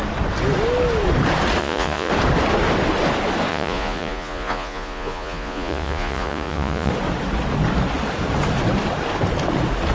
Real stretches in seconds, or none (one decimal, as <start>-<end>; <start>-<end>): 0.0-1.6; 2.1-3.5; 6.9-9.9